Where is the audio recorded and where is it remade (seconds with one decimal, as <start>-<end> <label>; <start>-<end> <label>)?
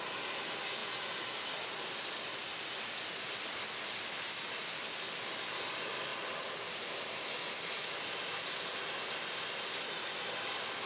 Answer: 0.0-6.1 recorded; 6.1-6.9 remade; 6.9-10.9 recorded